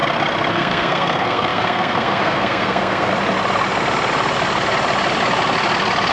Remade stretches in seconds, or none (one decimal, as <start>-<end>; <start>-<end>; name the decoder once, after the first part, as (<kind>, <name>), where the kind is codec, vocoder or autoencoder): 0.5-3.1 (codec, SNAC)